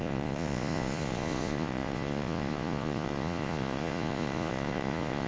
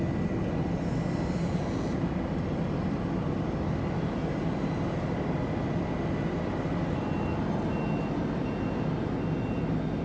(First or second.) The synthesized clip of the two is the first